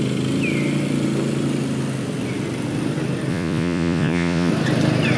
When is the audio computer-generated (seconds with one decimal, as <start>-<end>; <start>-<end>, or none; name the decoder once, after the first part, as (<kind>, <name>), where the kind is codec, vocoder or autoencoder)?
3.3-4.5 (vocoder, Vocos)